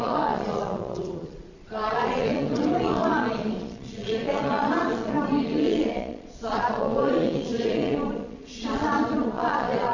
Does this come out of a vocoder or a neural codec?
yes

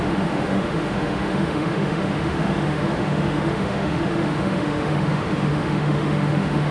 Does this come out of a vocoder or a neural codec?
yes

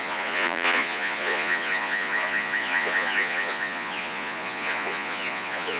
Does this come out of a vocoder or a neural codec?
yes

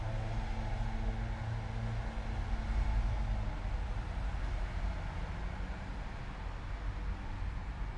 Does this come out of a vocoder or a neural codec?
no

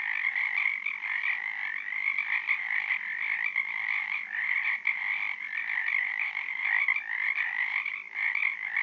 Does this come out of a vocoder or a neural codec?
no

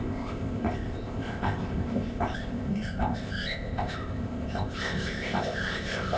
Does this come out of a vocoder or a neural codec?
yes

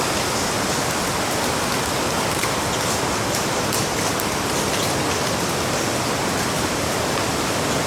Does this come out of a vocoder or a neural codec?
no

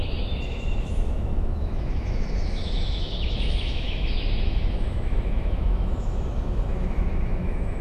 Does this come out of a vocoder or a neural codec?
yes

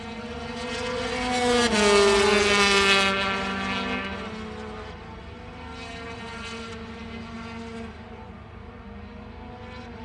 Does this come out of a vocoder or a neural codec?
no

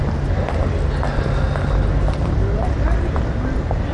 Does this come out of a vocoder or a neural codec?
no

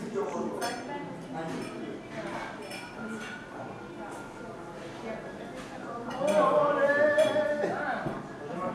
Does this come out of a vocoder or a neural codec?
no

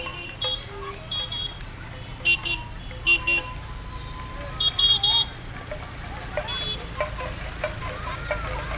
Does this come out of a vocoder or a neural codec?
no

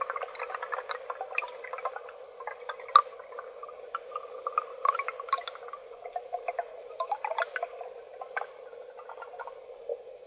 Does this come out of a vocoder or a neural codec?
no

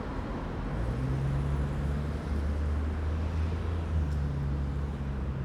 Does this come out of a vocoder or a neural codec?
no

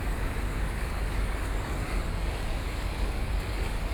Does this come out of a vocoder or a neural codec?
yes